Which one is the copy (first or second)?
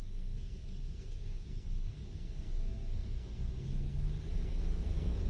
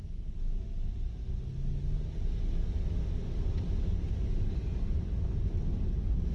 first